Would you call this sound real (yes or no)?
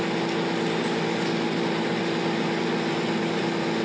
yes